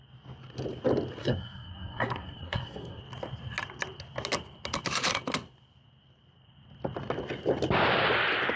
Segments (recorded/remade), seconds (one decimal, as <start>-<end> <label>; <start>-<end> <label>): 0.0-1.2 recorded; 1.2-3.0 remade; 3.0-8.6 recorded